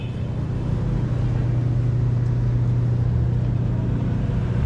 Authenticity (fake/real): real